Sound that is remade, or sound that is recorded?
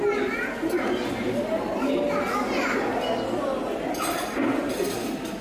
recorded